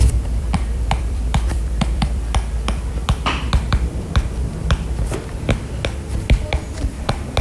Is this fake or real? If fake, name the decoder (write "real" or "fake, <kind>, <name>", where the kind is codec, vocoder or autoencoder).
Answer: fake, vocoder, BigVGAN v2